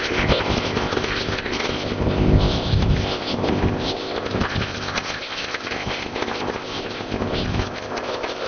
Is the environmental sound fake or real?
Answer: fake